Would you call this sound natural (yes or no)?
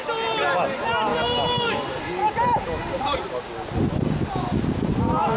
yes